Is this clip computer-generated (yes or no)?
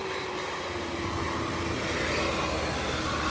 no